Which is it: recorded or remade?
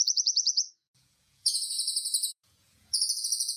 remade